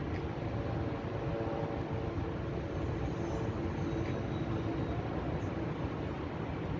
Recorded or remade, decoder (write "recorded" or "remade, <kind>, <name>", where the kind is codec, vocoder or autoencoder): recorded